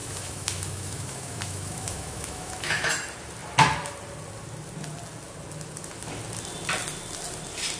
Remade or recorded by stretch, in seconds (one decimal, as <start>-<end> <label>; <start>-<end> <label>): 0.0-2.9 remade; 2.9-7.8 recorded